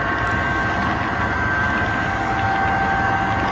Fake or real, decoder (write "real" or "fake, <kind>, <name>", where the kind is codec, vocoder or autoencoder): real